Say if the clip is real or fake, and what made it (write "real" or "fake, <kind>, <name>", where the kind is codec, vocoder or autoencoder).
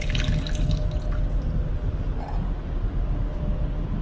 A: real